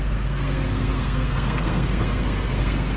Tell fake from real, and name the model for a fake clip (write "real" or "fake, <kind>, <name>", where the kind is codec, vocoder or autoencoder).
fake, codec, SNAC